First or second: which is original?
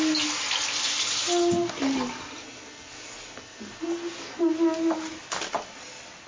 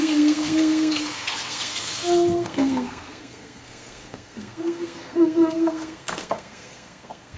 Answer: first